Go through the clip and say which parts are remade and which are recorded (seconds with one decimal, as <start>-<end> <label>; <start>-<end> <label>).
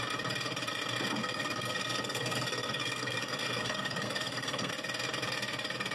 0.0-1.2 recorded; 1.2-4.7 remade; 4.7-5.9 recorded